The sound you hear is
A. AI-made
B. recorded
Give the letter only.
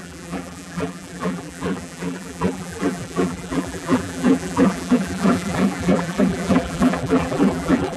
A